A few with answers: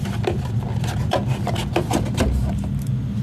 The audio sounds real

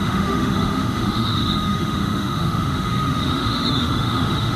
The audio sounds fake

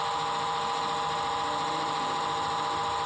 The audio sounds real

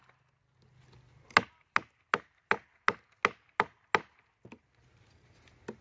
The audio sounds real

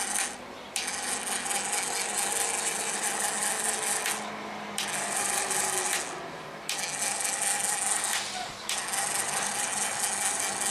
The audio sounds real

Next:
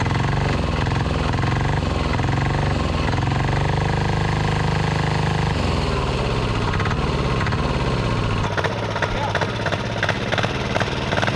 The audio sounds real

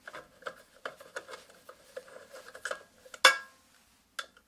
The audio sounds real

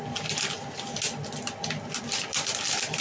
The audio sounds real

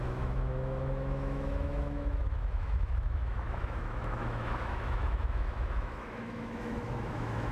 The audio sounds fake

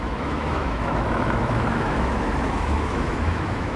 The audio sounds fake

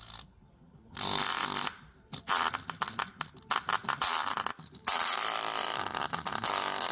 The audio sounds real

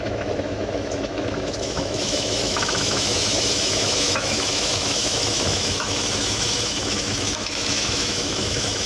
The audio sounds fake